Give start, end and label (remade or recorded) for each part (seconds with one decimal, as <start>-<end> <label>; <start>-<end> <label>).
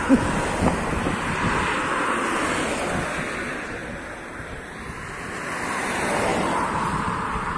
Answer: 0.0-3.8 recorded; 3.8-5.8 remade; 5.8-6.3 recorded; 6.3-7.6 remade